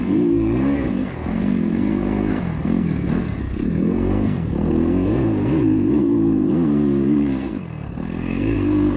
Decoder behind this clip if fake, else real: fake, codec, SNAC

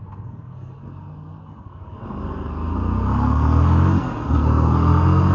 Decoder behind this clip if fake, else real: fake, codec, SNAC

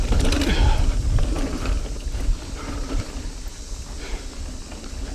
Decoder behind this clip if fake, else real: real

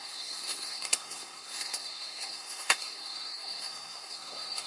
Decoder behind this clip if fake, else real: fake, codec, SNAC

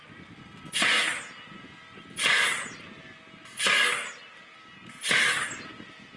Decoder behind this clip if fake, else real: real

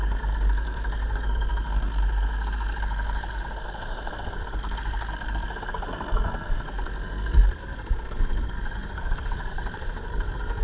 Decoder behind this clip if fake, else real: fake, codec, SNAC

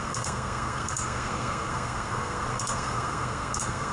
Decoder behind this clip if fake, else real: fake, codec, SNAC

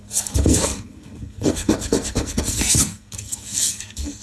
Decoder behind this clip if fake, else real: fake, codec, SNAC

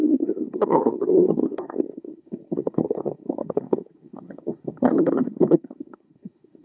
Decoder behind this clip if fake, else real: fake, codec, SNAC